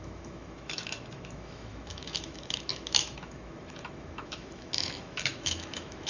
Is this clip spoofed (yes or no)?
yes